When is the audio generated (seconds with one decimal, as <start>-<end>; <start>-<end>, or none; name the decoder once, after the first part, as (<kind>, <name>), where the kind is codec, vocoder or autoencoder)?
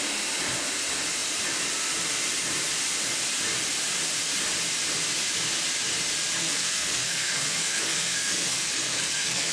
6.4-9.5 (codec, SNAC)